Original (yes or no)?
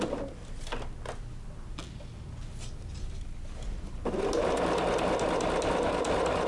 yes